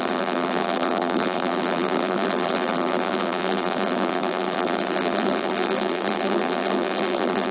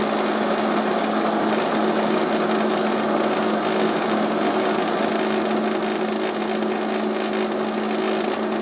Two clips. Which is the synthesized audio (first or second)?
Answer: first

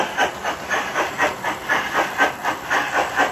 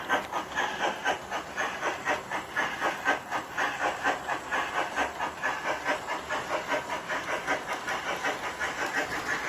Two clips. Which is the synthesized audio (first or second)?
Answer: first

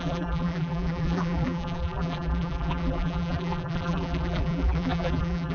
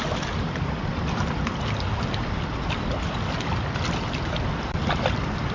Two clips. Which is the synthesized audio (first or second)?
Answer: first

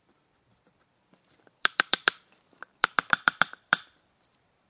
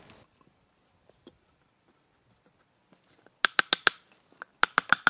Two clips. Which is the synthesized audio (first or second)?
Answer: first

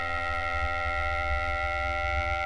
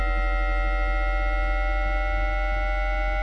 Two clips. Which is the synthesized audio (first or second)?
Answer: first